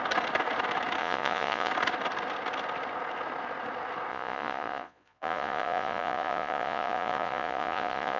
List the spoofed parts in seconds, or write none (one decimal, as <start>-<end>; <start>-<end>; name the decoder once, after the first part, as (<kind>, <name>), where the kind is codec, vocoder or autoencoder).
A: 1.0-1.7 (vocoder, Vocos); 4.1-8.2